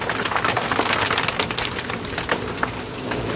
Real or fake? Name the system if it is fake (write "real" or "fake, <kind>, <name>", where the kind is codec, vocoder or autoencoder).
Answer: real